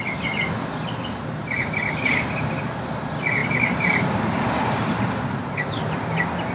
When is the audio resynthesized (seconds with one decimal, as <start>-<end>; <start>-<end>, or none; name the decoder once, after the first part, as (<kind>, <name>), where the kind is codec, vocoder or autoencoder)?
1.4-2.1 (vocoder, BigVGAN v2); 3.4-5.2